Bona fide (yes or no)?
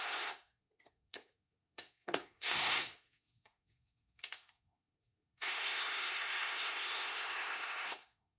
no